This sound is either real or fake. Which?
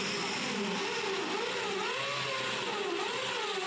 real